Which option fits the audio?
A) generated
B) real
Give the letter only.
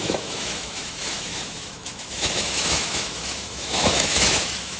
A